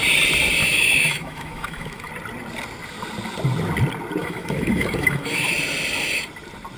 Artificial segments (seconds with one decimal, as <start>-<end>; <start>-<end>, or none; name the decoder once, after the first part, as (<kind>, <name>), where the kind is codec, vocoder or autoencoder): 0.6-2.1 (autoencoder, DAC-VAE); 4.2-5.5